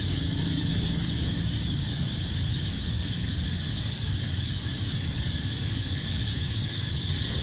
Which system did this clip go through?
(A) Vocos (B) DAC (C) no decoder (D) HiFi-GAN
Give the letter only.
B